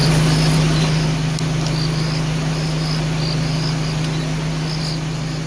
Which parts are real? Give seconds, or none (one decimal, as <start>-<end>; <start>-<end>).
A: 0.0-5.5